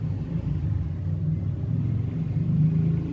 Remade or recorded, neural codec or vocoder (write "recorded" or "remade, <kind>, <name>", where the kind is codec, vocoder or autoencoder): recorded